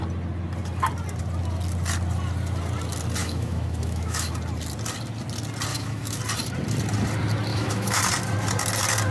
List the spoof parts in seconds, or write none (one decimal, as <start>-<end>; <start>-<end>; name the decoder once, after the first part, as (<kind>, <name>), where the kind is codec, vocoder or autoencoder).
3.2-4.3 (autoencoder, DAC-VAE); 5.7-6.2; 7.5-8.0